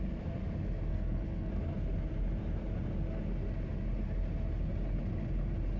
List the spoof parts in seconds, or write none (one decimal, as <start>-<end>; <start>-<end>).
0.9-1.5